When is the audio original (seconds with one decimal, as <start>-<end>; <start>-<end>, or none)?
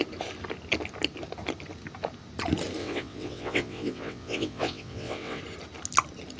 0.0-2.8; 5.4-6.4